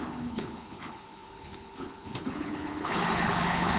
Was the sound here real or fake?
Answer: fake